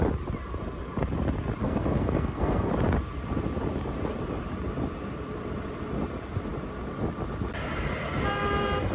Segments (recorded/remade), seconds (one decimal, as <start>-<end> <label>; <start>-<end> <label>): 0.0-1.6 recorded; 1.6-2.7 remade; 2.7-8.9 recorded